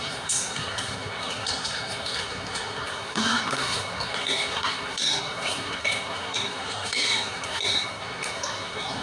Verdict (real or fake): fake